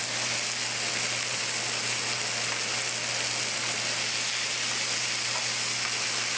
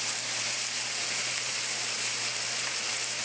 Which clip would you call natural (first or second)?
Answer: first